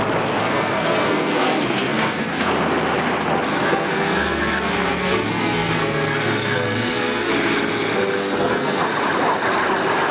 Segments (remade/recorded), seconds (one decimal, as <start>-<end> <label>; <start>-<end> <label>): 0.0-0.4 recorded; 0.4-2.5 remade; 2.5-3.5 recorded; 3.5-7.3 remade; 7.3-8.2 recorded; 8.2-8.8 remade; 8.8-10.1 recorded